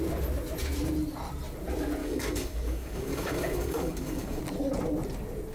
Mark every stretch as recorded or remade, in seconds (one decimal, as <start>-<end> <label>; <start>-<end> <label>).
0.0-2.0 recorded; 2.0-4.4 remade; 4.4-5.5 recorded